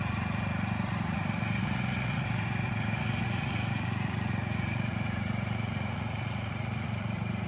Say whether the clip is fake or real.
fake